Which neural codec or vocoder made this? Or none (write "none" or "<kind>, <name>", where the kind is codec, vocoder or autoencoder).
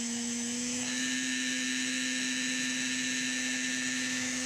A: autoencoder, DAC-VAE